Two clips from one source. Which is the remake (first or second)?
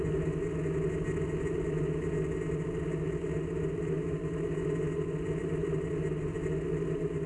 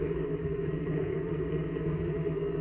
second